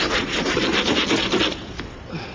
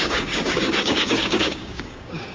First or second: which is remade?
second